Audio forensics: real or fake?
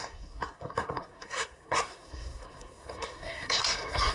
fake